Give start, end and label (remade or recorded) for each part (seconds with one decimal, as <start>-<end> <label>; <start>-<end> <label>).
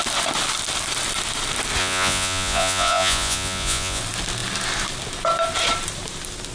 0.0-1.8 recorded; 1.8-4.0 remade; 4.0-6.5 recorded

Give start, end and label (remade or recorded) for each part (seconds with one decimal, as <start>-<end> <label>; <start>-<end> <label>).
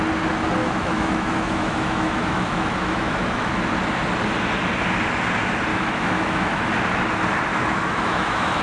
0.0-0.6 recorded; 0.6-3.5 remade; 3.5-5.7 recorded; 5.7-6.7 remade; 6.7-7.5 recorded; 7.5-8.6 remade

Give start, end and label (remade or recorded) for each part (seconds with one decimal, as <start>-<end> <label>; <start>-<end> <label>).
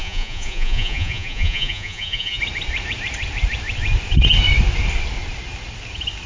0.0-2.4 remade; 2.4-6.3 recorded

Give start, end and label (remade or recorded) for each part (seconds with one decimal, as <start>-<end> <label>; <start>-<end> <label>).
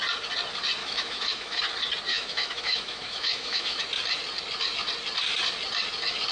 0.0-0.8 recorded; 0.8-1.6 remade; 1.6-2.1 recorded; 2.1-3.8 remade; 3.8-6.3 recorded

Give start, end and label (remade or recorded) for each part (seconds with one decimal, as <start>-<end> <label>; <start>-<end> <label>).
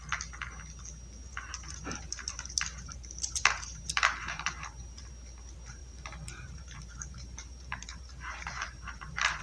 0.0-1.3 recorded; 1.3-5.1 remade; 5.1-5.8 recorded; 5.8-9.4 remade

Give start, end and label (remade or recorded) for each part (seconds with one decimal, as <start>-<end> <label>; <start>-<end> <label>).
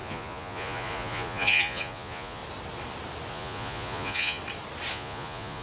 0.0-2.4 remade; 2.4-3.3 recorded; 3.3-4.4 remade; 4.4-4.9 recorded; 4.9-5.6 remade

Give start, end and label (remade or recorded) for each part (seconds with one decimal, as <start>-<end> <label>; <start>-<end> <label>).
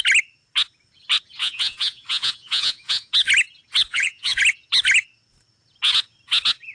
0.0-1.4 recorded; 1.4-3.1 remade; 3.1-3.9 recorded; 3.9-4.4 remade; 4.4-6.7 recorded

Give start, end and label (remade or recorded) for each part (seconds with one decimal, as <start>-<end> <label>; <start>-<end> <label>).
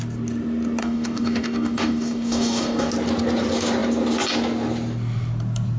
0.0-0.8 recorded; 0.8-2.9 remade; 2.9-5.8 recorded